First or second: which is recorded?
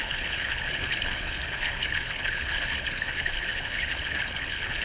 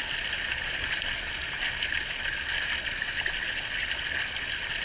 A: second